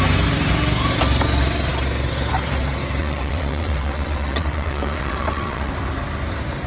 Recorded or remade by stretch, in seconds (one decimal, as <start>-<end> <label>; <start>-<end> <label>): 0.0-3.0 recorded; 3.0-5.7 remade; 5.7-6.7 recorded